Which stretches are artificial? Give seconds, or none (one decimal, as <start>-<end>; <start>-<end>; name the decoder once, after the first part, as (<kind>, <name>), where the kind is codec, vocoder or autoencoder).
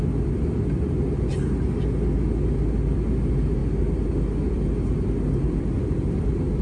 none